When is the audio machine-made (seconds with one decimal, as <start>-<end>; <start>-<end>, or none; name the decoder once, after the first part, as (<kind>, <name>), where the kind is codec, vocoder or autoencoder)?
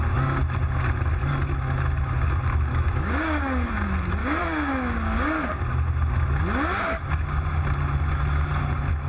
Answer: 2.7-3.7 (codec, DAC); 4.2-5.6